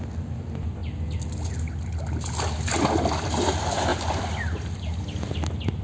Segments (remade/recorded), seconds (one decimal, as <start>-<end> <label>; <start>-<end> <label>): 0.0-5.8 recorded